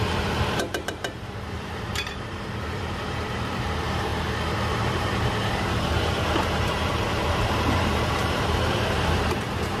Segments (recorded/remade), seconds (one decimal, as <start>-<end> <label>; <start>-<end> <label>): 0.0-4.1 remade; 4.1-4.7 recorded; 4.7-9.8 remade